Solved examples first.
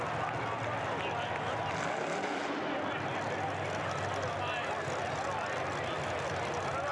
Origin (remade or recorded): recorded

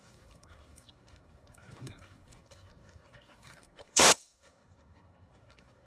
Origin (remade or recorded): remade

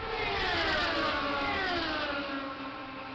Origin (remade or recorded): recorded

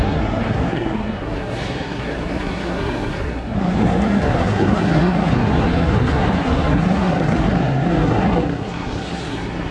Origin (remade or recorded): remade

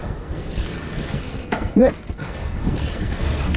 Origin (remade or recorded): remade